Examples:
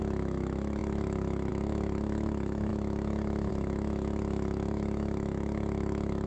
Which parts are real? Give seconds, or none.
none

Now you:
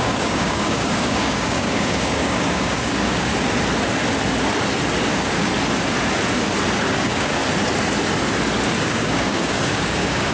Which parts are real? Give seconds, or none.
3.3-5.0; 5.5-6.9; 7.4-8.8